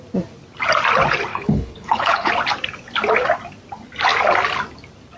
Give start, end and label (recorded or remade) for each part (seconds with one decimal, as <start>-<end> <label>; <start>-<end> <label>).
0.0-1.3 recorded; 1.3-2.3 remade; 2.3-5.2 recorded